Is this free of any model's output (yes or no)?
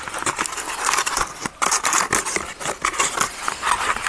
yes